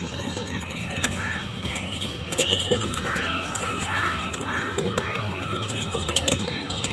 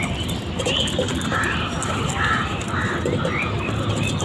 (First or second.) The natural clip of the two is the second